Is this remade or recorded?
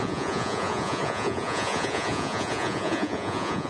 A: remade